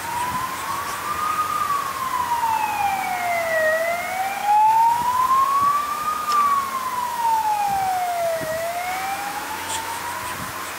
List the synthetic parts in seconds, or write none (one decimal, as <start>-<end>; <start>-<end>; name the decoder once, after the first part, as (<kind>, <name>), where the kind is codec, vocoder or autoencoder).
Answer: 4.4-6.3 (autoencoder, DAC-VAE); 7.1-10.0